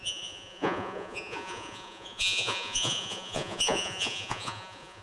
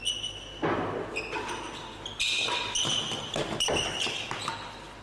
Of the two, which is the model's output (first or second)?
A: first